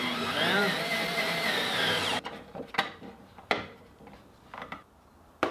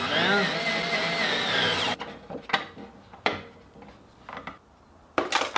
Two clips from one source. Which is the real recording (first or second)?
second